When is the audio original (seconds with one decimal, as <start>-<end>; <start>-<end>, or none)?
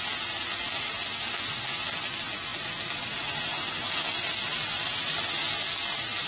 0.0-6.3